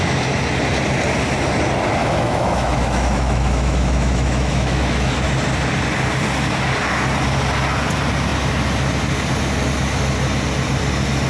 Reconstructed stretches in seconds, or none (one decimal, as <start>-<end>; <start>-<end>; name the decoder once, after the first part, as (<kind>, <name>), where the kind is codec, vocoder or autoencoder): 2.0-5.1 (autoencoder, DAC-VAE)